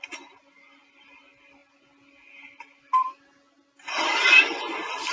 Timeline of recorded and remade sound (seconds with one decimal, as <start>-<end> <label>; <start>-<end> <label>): 0.0-5.1 recorded